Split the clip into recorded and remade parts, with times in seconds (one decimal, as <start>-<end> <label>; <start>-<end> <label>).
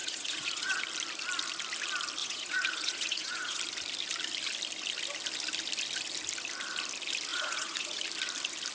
0.0-0.8 remade; 0.8-2.2 recorded; 2.2-3.6 remade; 3.6-7.3 recorded; 7.3-8.0 remade; 8.0-8.7 recorded